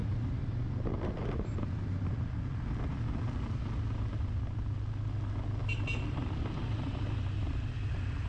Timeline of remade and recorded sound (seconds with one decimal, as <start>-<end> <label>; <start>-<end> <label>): 0.0-3.2 remade; 3.2-5.6 recorded; 5.6-7.8 remade; 7.8-8.3 recorded